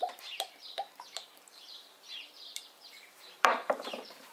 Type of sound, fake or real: fake